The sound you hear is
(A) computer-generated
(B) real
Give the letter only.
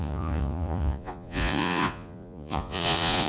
A